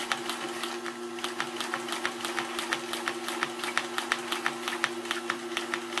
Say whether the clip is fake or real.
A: real